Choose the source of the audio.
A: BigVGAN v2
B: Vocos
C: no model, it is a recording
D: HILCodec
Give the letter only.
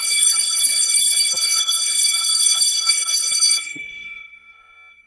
D